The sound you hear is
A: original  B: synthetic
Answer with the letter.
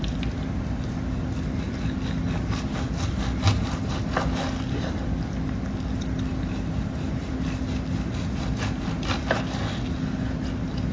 A